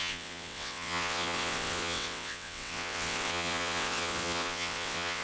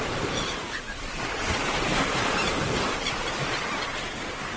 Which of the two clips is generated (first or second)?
first